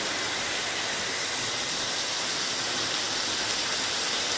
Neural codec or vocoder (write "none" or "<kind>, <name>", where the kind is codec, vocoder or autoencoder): none